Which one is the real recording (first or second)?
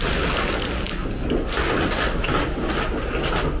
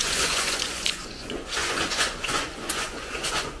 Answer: first